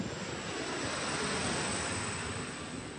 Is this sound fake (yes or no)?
no